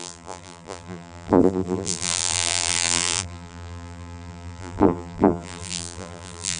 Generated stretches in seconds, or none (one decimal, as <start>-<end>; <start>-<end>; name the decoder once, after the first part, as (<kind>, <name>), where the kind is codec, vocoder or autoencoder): 0.0-6.6 (vocoder, BigVGAN v2)